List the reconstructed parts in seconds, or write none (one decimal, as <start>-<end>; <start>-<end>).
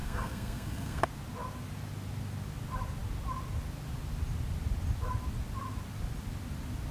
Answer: 0.0-1.0